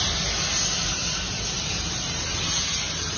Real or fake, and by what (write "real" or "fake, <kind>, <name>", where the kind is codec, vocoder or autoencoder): fake, vocoder, BigVGAN v2